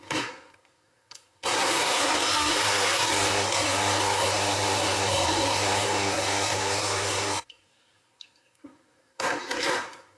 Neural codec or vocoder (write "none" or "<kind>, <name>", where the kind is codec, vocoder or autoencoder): codec, SNAC